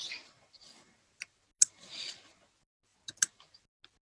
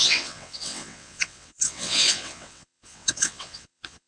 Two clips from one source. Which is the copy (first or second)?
second